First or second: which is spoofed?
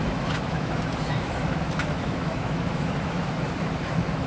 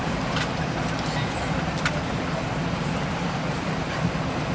first